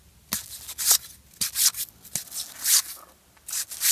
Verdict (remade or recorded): recorded